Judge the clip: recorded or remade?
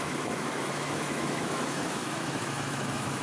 remade